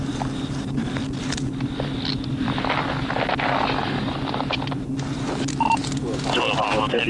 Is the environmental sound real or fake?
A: real